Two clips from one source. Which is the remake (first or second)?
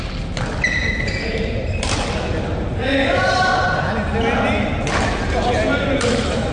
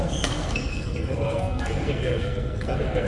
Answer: second